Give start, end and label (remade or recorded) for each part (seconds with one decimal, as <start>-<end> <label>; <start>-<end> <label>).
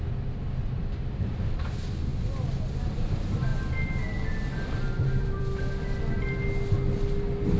0.0-7.6 recorded